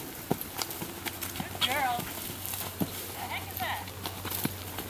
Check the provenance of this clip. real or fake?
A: real